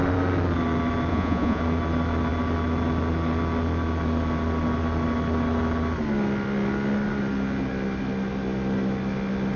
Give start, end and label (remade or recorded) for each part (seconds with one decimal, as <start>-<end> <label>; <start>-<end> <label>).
0.0-1.1 recorded; 1.1-1.6 remade; 1.6-9.6 recorded